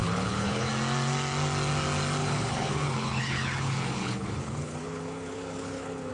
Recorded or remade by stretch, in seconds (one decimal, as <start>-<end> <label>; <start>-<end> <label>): 0.0-0.7 remade; 0.7-2.2 recorded; 2.2-6.1 remade